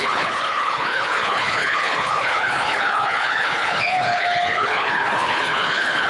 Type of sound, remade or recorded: remade